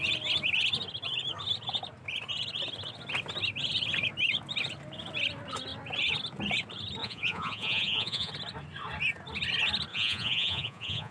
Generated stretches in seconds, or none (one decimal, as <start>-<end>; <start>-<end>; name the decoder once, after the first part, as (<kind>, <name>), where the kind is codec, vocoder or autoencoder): 7.0-8.3 (vocoder, Vocos); 9.9-11.1